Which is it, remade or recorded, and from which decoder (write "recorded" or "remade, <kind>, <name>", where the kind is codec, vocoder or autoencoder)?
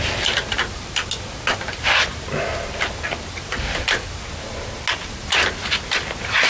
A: recorded